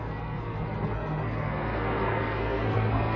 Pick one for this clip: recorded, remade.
remade